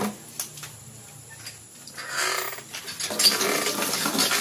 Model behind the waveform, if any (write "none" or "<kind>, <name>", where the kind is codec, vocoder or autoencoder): none